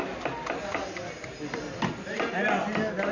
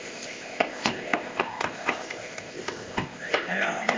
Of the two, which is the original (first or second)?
first